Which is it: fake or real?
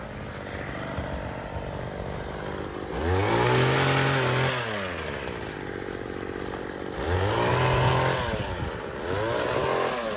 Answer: real